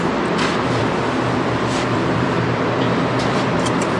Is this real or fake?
fake